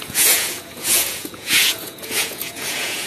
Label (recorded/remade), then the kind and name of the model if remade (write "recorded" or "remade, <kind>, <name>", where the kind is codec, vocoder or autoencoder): remade, vocoder, Vocos